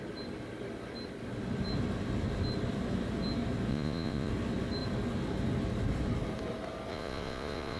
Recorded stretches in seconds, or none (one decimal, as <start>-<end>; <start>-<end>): 0.0-3.7; 4.3-6.9